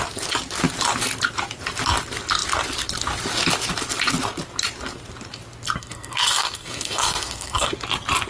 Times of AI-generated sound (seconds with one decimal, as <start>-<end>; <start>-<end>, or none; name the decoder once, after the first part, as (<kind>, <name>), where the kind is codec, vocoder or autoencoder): 5.8-7.7 (codec, SNAC)

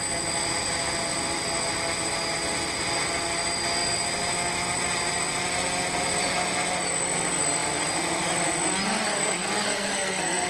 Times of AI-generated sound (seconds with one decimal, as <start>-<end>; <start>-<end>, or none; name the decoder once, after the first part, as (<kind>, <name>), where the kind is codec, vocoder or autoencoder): 9.1-10.5 (codec, SNAC)

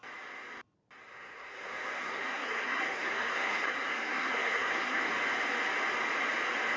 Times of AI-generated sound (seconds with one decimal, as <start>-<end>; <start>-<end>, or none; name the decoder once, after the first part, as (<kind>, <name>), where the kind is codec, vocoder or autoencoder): 1.0-5.1 (codec, SNAC)

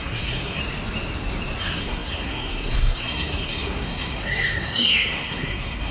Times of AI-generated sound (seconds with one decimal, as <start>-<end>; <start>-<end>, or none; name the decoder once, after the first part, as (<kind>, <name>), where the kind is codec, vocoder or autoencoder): 0.0-0.6 (codec, SNAC); 1.6-5.9

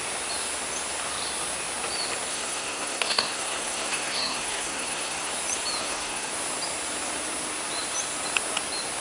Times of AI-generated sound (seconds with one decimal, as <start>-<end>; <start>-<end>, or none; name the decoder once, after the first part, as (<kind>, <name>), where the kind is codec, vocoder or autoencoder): 2.3-5.3 (codec, SNAC); 5.8-6.3

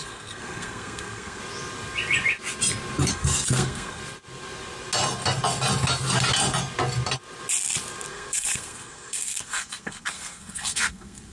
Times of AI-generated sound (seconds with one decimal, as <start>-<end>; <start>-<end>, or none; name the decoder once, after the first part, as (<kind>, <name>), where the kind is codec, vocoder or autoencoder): 0.0-1.4 (codec, SNAC); 3.1-4.0; 8.1-11.3

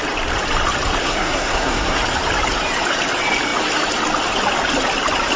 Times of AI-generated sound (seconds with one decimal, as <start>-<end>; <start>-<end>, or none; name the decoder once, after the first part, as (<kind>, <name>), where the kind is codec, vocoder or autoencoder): 1.0-2.0 (codec, SNAC)

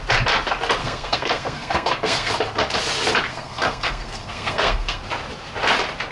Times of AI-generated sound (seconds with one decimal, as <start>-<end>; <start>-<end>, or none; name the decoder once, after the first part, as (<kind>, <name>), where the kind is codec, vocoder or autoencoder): 0.8-2.3 (codec, SNAC); 3.3-5.0